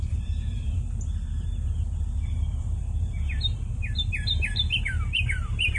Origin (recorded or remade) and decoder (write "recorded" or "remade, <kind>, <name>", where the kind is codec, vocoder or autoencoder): remade, vocoder, BigVGAN v2